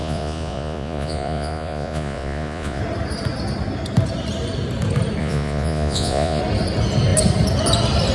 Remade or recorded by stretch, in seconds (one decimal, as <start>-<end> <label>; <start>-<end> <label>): 0.0-2.8 remade; 2.8-5.2 recorded; 5.2-6.4 remade; 6.4-8.1 recorded

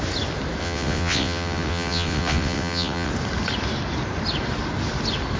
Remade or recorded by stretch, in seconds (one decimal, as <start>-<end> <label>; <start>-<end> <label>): 0.0-0.6 recorded; 0.6-3.1 remade; 3.1-5.4 recorded

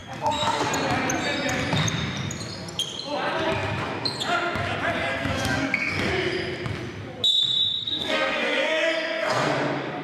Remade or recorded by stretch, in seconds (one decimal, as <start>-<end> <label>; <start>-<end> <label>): 0.0-0.7 remade; 0.7-5.1 recorded; 5.1-6.1 remade; 6.1-7.8 recorded; 7.8-9.5 remade; 9.5-10.0 recorded

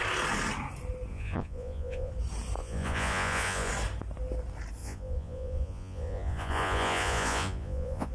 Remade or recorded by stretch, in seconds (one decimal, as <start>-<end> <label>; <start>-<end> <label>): 0.0-1.1 recorded; 1.1-2.1 remade; 2.1-2.6 recorded; 2.6-3.7 remade; 3.7-4.8 recorded; 4.8-8.1 remade

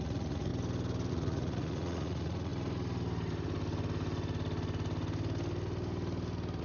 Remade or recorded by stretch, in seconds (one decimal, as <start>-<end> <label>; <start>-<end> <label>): 0.0-0.5 remade; 0.5-1.1 recorded; 1.1-2.5 remade; 2.5-6.6 recorded

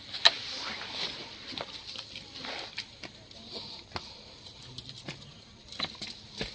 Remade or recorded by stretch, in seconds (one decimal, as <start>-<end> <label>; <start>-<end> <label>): 0.0-1.2 recorded; 1.2-5.1 remade; 5.1-5.6 recorded; 5.6-6.1 remade; 6.1-6.5 recorded

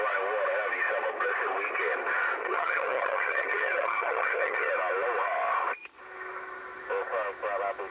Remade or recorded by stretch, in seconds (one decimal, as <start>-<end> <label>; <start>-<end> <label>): 0.0-2.4 recorded; 2.4-4.7 remade; 4.7-7.9 recorded